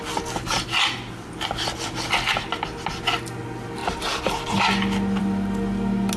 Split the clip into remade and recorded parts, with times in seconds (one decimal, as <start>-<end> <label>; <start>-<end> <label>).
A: 0.0-6.2 recorded